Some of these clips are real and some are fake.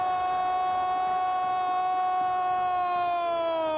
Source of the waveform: real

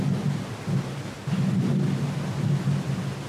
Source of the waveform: real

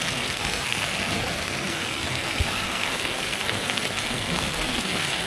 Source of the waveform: fake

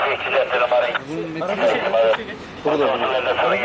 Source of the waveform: real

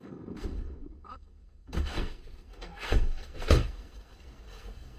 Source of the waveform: fake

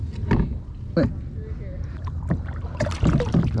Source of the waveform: real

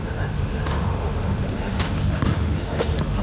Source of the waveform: fake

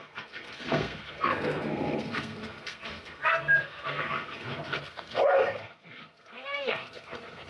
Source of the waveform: fake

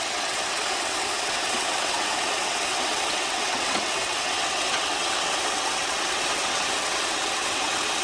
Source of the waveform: fake